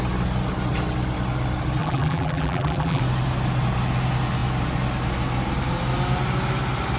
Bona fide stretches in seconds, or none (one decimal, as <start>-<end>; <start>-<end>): 0.0-1.8; 3.0-7.0